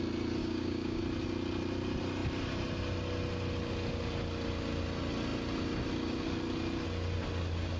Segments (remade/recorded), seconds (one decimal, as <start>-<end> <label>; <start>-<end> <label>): 0.0-0.4 recorded; 0.4-1.0 remade; 1.0-7.8 recorded